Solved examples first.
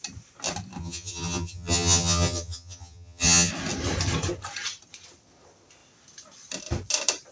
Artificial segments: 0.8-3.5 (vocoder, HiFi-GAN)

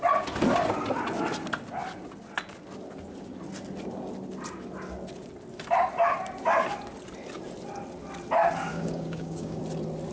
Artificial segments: 8.7-9.6 (codec, DAC)

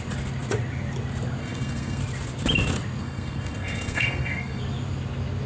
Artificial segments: 1.4-2.0 (codec, SNAC); 3.0-4.6

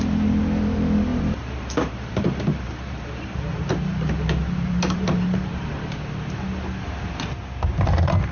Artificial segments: 1.1-6.1 (vocoder, BigVGAN v2)